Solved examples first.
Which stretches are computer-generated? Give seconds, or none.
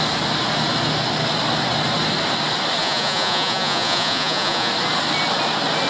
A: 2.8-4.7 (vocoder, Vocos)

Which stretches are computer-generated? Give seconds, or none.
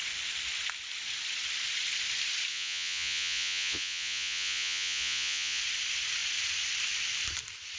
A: 2.5-5.6 (vocoder, Vocos)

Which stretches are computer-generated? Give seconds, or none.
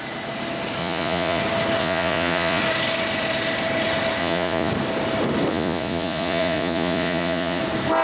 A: 0.8-1.4 (vocoder, Vocos); 1.8-2.6; 4.2-4.7; 5.5-7.6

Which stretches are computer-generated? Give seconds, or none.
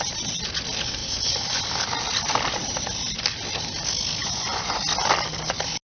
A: 1.0-1.6 (vocoder, Vocos); 4.2-4.8